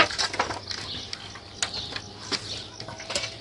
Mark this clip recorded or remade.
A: recorded